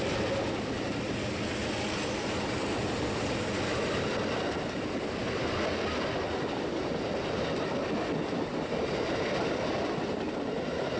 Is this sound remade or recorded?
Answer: recorded